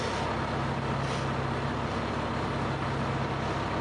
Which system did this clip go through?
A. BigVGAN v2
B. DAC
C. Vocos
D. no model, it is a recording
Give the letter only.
D